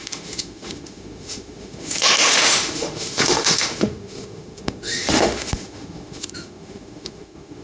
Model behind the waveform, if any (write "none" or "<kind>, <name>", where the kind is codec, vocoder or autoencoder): autoencoder, DAC-VAE